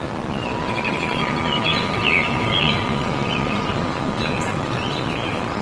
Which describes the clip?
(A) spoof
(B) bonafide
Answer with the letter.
A